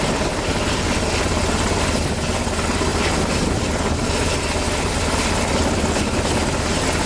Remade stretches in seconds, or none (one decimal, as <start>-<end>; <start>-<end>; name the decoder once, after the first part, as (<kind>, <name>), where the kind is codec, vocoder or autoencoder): 2.9-3.5 (vocoder, BigVGAN v2)